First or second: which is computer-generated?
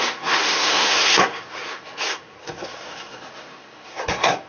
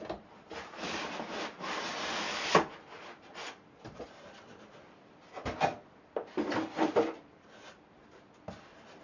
first